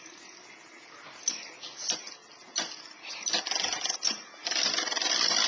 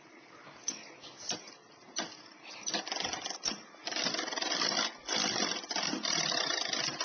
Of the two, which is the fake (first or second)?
second